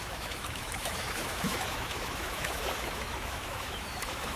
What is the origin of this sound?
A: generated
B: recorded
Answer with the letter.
A